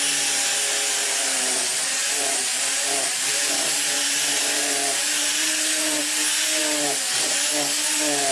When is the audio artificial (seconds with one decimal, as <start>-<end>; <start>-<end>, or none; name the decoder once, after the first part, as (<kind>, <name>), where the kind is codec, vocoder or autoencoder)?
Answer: 1.0-1.6 (vocoder, BigVGAN v2); 2.0-6.0